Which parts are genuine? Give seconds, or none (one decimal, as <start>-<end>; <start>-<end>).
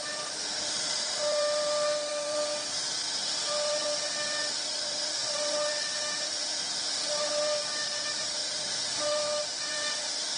none